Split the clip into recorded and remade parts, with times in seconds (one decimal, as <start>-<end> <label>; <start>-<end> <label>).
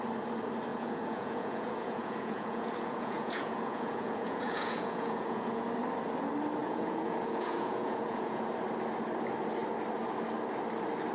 0.0-0.7 recorded; 0.7-5.7 remade; 5.7-6.6 recorded; 6.6-8.5 remade; 8.5-11.1 recorded